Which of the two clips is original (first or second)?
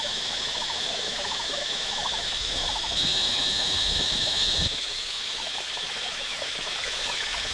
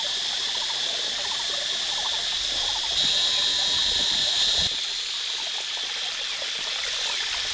second